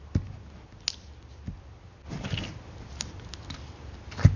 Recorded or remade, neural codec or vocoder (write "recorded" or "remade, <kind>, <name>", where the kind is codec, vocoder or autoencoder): recorded